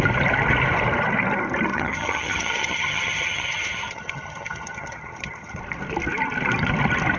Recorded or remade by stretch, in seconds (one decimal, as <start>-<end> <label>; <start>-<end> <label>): 0.0-1.7 recorded; 1.7-5.6 remade; 5.6-7.2 recorded